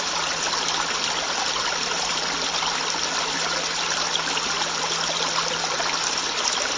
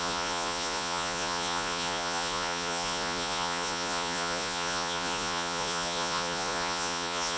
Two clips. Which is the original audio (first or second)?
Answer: first